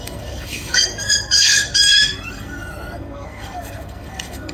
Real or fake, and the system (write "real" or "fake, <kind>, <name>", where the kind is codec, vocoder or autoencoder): fake, codec, SNAC